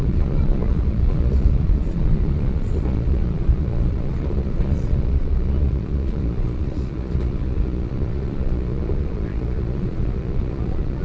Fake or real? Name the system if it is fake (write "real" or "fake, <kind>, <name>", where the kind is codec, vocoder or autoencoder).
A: fake, vocoder, Vocos